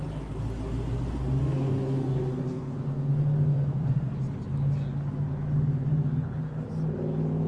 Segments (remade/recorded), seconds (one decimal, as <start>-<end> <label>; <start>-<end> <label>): 0.0-1.4 recorded; 1.4-4.1 remade; 4.1-7.5 recorded